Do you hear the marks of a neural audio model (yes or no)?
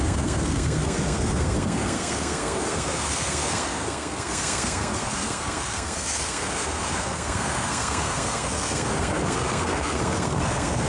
yes